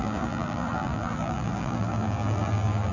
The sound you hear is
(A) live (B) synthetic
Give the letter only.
B